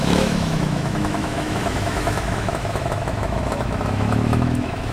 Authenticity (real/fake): fake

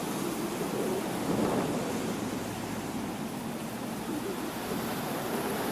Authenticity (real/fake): real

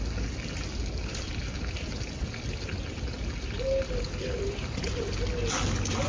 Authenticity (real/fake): real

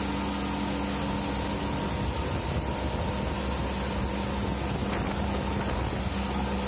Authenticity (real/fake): real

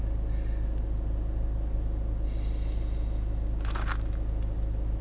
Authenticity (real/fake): real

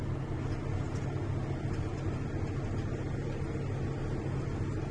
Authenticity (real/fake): real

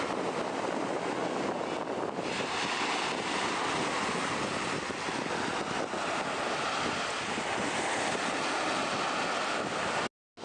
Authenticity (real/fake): real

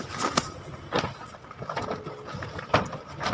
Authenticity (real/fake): real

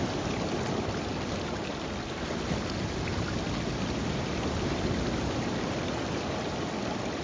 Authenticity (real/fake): real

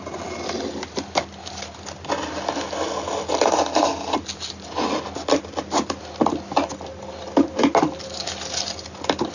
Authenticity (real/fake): real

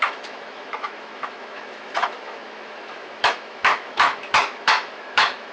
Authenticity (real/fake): fake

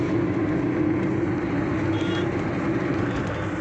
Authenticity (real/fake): real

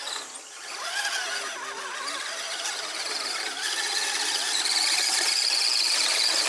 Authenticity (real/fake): real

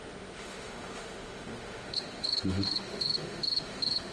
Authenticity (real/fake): fake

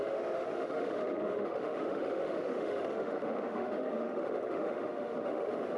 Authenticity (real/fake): fake